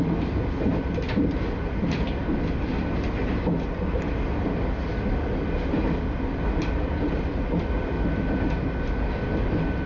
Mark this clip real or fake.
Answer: real